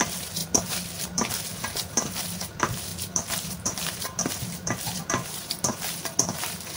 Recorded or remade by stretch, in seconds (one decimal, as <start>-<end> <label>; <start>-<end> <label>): 0.0-6.8 remade